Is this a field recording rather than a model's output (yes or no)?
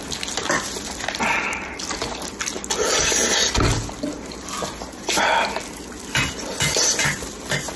yes